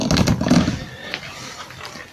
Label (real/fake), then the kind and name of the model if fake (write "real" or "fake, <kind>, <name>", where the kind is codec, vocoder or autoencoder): real